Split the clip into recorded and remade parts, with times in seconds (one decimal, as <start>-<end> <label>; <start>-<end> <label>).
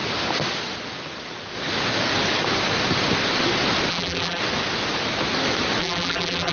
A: 0.0-3.9 recorded; 3.9-4.4 remade; 4.4-5.8 recorded; 5.8-6.5 remade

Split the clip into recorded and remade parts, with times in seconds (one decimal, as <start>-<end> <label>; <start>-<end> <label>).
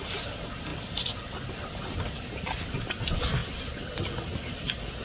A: 0.0-0.7 recorded; 0.7-1.5 remade; 1.5-3.4 recorded; 3.4-3.9 remade; 3.9-5.0 recorded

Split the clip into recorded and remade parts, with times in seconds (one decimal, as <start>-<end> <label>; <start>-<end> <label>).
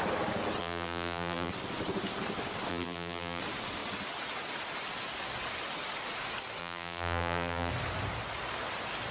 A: 0.0-0.6 recorded; 0.6-1.5 remade; 1.5-2.7 recorded; 2.7-3.4 remade; 3.4-6.6 recorded; 6.6-7.7 remade; 7.7-9.1 recorded